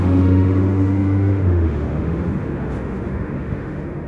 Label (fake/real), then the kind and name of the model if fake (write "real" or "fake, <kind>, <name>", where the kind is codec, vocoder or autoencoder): fake, autoencoder, DAC-VAE